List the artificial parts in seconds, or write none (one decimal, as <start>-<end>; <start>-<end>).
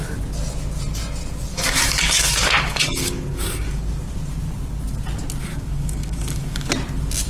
1.5-3.8; 5.4-6.7